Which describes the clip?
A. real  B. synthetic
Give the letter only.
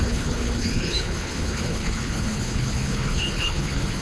B